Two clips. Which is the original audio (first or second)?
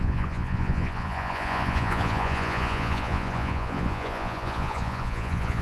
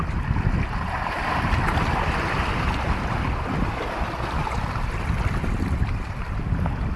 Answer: second